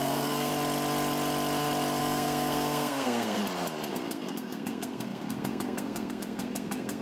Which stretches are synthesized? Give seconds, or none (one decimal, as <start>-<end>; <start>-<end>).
0.0-0.5; 2.0-3.4; 3.9-7.0